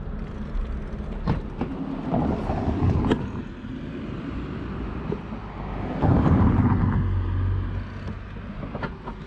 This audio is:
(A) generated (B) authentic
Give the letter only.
B